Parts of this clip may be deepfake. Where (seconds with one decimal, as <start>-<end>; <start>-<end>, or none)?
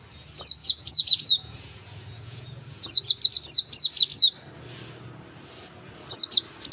0.6-3.0